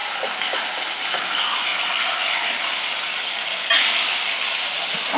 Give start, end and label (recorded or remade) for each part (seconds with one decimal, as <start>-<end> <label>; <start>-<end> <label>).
0.0-5.2 recorded

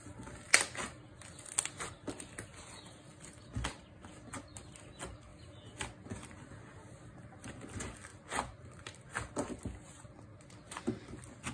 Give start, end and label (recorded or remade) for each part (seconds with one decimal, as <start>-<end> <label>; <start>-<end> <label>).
0.0-11.5 recorded

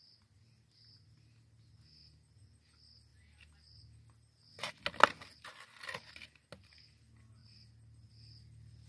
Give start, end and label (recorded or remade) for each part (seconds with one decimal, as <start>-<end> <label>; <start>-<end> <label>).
0.0-8.9 recorded

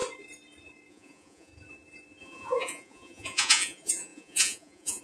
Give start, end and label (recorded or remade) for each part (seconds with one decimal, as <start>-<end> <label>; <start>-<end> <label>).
0.0-0.9 recorded; 0.9-1.5 remade; 1.5-2.2 recorded; 2.2-5.0 remade